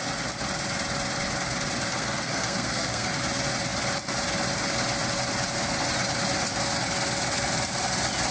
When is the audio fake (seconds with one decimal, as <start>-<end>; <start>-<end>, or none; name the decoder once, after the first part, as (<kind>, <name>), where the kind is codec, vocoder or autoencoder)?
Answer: 1.9-3.1 (codec, SNAC)